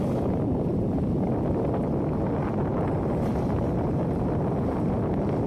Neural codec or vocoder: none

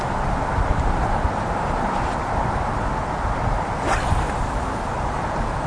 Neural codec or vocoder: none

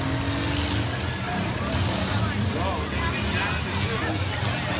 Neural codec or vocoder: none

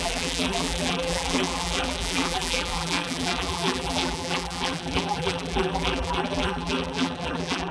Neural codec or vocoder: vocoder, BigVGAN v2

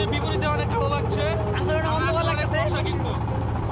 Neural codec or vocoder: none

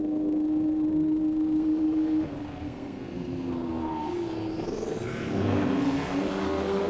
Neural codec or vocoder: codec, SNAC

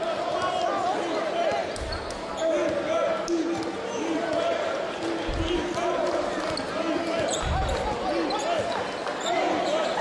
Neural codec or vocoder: none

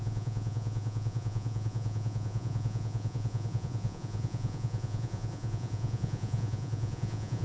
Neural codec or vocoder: vocoder, Vocos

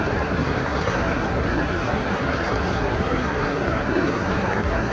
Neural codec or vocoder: codec, SNAC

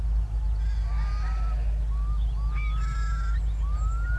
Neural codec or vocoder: none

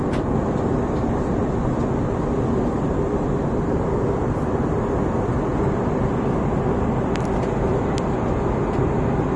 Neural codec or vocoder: none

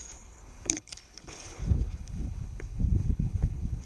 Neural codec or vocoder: codec, HILCodec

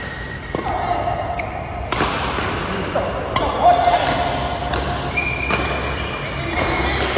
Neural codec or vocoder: none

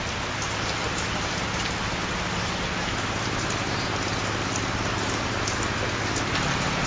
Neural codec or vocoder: none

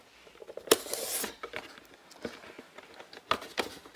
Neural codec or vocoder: none